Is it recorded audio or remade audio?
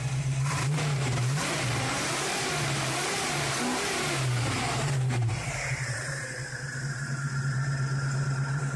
remade